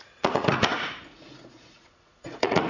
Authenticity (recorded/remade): remade